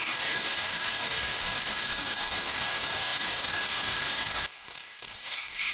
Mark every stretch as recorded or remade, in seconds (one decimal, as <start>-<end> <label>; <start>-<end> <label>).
0.0-5.7 remade